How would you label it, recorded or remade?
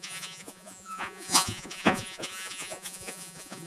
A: remade